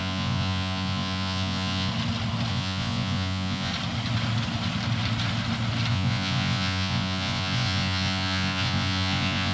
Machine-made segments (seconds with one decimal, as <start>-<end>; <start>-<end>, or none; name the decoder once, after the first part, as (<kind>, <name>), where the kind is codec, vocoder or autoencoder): 0.0-1.9 (vocoder, Vocos); 2.5-3.7; 5.9-9.5